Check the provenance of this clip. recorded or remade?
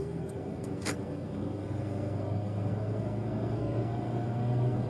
remade